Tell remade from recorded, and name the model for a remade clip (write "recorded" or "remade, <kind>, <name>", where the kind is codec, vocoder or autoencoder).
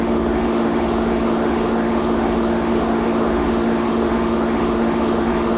remade, autoencoder, DAC-VAE